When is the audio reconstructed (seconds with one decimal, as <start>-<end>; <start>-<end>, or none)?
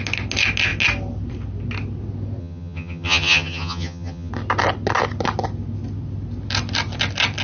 2.4-4.3